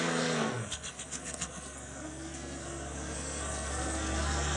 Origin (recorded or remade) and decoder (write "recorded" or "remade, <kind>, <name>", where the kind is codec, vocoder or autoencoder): remade, codec, SNAC